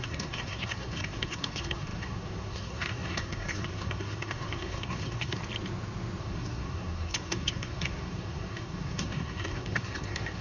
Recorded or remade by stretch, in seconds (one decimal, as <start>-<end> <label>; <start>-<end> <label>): 0.0-5.4 remade; 5.4-6.2 recorded; 6.2-10.4 remade